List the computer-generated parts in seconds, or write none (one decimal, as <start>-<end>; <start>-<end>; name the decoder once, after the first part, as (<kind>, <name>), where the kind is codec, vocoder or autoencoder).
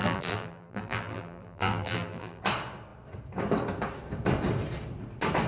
0.0-2.4 (vocoder, BigVGAN v2)